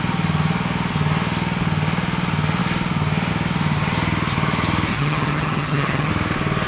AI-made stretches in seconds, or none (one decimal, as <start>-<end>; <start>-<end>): 4.9-6.1